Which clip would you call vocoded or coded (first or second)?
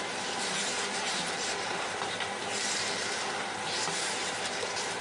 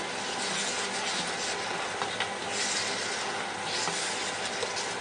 first